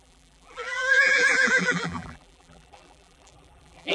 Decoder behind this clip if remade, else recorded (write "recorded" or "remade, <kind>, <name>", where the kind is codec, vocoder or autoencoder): remade, vocoder, BigVGAN v2